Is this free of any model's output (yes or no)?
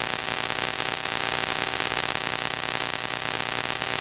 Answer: yes